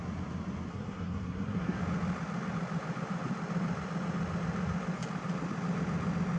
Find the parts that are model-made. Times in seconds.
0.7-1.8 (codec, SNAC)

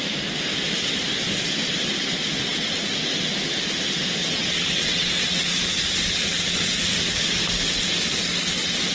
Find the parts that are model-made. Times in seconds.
4.2-5.4 (vocoder, WaveNeXt)

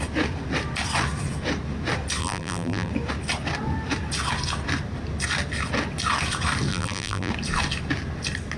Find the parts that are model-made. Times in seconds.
2.2-2.9 (vocoder, BigVGAN v2); 6.7-7.3

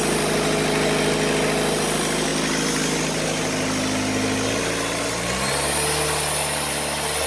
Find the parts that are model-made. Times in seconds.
none

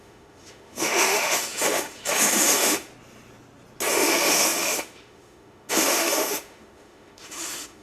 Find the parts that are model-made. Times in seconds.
0.0-2.9 (autoencoder, DAC-VAE); 3.9-7.8

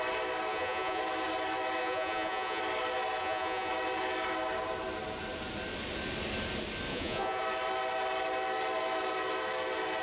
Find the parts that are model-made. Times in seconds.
0.5-1.0 (vocoder, Vocos); 1.8-2.6; 3.2-3.7; 6.9-7.4

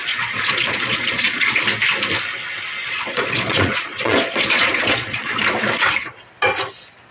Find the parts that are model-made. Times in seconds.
0.0-1.6 (vocoder, Vocos); 2.8-5.4